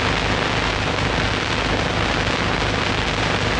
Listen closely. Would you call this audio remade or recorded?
recorded